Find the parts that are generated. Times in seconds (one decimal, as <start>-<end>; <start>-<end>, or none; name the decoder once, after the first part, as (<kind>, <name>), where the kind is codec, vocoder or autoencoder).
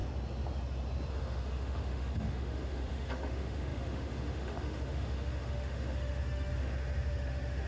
1.1-7.7 (autoencoder, DAC-VAE)